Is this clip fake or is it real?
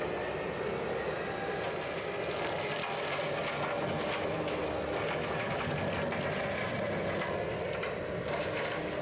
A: real